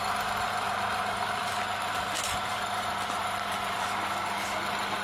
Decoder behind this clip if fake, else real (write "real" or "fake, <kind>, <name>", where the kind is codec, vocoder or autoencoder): real